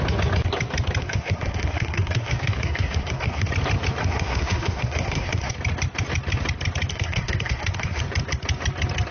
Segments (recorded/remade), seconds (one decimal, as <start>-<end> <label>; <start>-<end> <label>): 0.0-1.0 recorded; 1.0-3.5 remade; 3.5-4.0 recorded; 4.0-5.5 remade; 5.5-6.9 recorded; 6.9-8.0 remade; 8.0-9.1 recorded